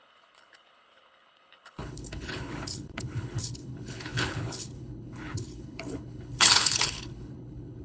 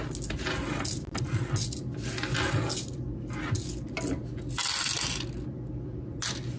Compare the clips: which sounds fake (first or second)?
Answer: first